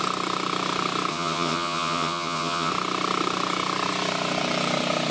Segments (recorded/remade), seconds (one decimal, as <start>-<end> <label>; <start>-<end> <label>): 0.0-1.1 recorded; 1.1-2.7 remade; 2.7-5.1 recorded